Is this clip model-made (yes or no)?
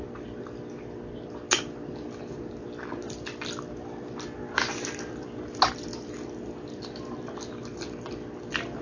no